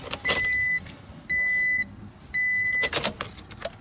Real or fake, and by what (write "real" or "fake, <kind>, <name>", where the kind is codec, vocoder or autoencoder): real